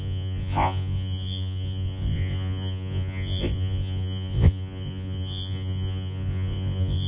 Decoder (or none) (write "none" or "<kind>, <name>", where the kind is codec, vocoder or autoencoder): vocoder, Vocos